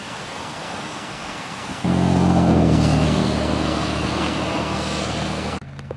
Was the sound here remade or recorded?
remade